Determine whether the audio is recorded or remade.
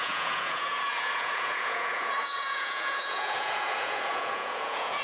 remade